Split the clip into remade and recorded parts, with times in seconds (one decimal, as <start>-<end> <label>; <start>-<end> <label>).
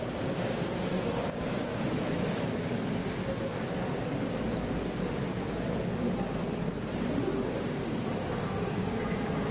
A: 0.0-1.7 remade; 1.7-2.6 recorded; 2.6-3.0 remade; 3.0-7.5 recorded; 7.5-9.5 remade